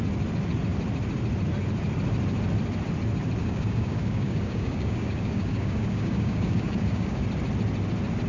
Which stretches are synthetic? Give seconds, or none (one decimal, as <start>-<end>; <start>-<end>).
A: 3.4-7.2